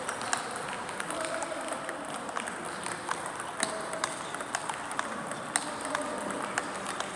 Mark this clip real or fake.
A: real